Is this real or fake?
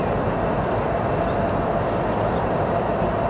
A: real